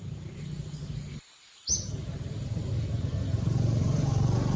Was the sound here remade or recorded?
recorded